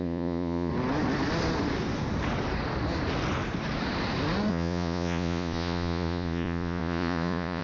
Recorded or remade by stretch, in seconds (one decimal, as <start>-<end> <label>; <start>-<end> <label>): 0.0-0.7 remade; 0.7-4.5 recorded; 4.5-7.6 remade